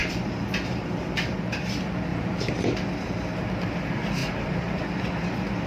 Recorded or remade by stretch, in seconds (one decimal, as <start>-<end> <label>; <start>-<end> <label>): 0.0-1.5 remade; 1.5-2.1 recorded; 2.1-2.6 remade; 2.6-4.2 recorded; 4.2-4.8 remade; 4.8-5.7 recorded